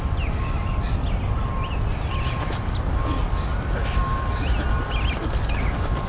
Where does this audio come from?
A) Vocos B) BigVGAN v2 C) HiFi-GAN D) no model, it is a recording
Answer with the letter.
D